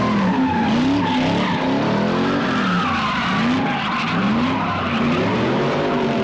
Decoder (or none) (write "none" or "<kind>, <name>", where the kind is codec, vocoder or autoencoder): none